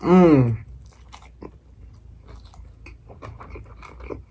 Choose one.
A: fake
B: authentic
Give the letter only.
B